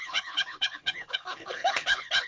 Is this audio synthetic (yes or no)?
yes